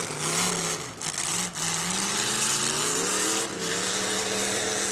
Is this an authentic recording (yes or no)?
yes